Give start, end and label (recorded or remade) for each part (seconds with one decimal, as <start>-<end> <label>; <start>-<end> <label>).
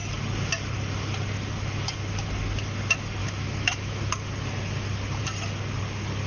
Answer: 0.0-3.2 recorded; 3.2-4.0 remade; 4.0-6.3 recorded